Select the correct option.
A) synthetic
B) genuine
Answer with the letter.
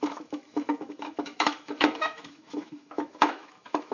A